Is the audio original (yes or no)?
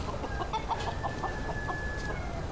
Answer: yes